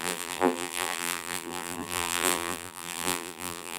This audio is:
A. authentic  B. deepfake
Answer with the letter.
B